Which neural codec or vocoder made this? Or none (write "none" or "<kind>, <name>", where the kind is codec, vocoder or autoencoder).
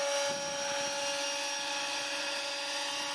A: none